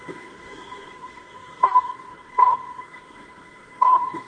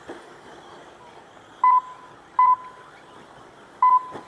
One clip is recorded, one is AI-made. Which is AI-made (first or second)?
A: first